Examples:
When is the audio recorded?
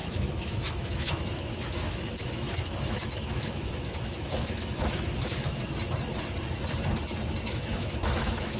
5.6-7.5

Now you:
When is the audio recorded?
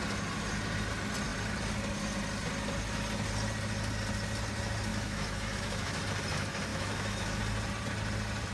0.0-4.9; 6.0-6.7; 7.4-8.5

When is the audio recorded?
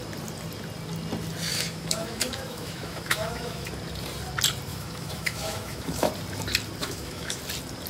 0.0-1.5; 3.7-4.7; 6.1-6.8; 7.4-7.9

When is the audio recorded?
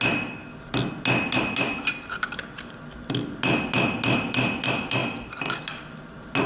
0.0-6.5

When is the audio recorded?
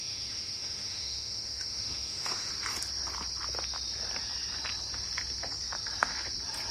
2.5-6.7